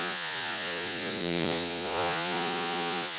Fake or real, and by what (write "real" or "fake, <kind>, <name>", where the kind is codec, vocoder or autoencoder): fake, vocoder, Vocos